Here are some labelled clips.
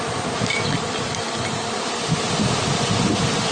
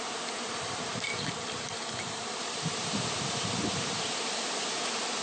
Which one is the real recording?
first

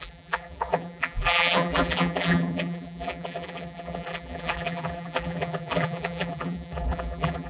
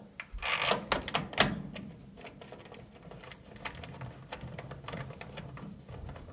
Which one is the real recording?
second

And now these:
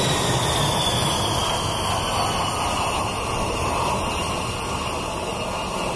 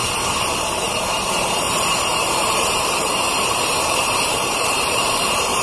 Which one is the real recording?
first